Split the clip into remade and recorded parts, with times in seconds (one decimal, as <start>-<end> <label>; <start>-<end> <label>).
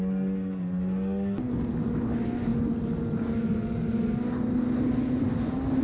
0.0-5.8 recorded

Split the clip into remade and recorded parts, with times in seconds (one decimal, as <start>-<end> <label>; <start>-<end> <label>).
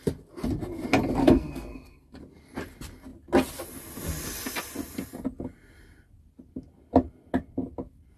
0.0-1.2 recorded; 1.2-2.2 remade; 2.2-8.2 recorded